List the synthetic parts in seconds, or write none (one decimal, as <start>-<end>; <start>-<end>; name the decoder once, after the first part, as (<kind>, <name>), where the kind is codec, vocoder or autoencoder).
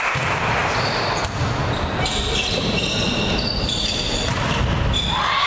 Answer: none